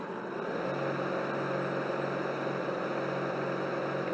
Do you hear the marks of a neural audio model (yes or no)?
no